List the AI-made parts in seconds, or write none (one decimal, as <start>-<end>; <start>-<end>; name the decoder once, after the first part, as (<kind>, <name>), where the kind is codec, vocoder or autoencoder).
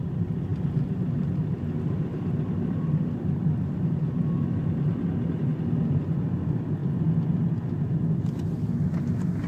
0.5-5.5 (vocoder, BigVGAN v2); 6.8-7.5